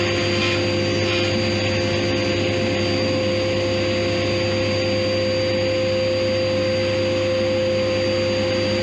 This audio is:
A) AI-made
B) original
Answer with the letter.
B